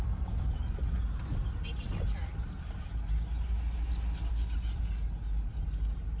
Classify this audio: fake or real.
real